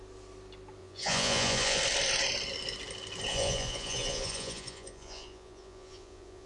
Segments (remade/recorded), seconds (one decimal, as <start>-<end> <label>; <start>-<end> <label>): 0.0-0.8 recorded; 0.8-1.8 remade; 1.8-3.3 recorded; 3.3-6.5 remade

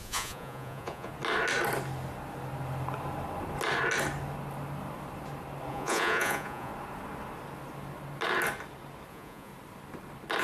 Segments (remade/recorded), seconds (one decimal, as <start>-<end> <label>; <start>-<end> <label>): 0.0-1.1 remade; 1.1-5.7 recorded; 5.7-6.7 remade; 6.7-9.1 recorded; 9.1-9.5 remade; 9.5-10.4 recorded

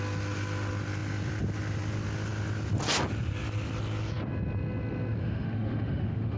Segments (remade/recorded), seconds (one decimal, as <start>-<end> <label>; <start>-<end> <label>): 0.0-5.2 recorded; 5.2-6.4 remade

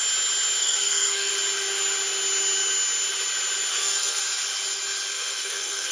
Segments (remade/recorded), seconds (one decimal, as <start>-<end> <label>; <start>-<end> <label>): 0.0-0.6 recorded; 0.6-1.3 remade; 1.3-3.7 recorded; 3.7-4.2 remade; 4.2-5.1 recorded; 5.1-5.9 remade